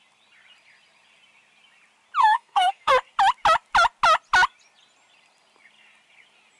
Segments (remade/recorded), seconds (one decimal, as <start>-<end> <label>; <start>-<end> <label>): 0.0-2.2 recorded; 2.2-2.9 remade; 2.9-6.6 recorded